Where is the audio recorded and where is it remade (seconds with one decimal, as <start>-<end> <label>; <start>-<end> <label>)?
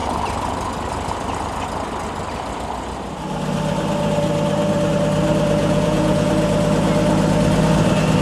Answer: 0.0-5.6 recorded; 5.6-6.3 remade; 6.3-8.2 recorded